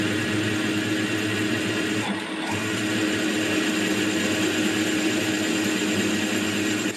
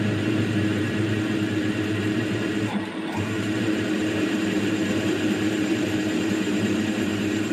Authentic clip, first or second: first